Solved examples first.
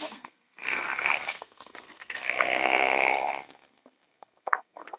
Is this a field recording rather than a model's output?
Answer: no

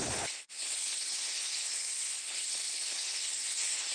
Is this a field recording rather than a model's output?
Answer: no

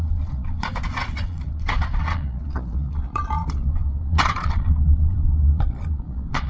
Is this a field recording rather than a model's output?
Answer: no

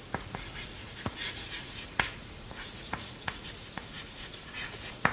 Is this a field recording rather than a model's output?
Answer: no